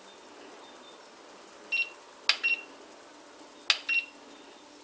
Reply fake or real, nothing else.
real